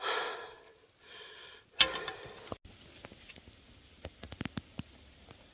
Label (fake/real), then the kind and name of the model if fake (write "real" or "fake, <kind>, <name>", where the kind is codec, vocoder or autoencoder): real